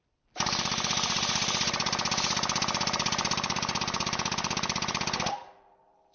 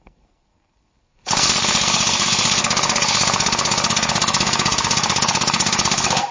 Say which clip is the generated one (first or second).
second